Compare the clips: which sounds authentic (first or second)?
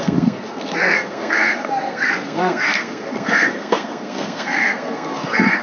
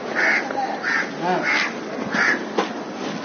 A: second